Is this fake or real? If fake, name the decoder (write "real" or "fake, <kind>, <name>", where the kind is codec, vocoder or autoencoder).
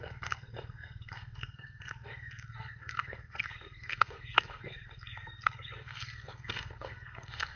fake, codec, SNAC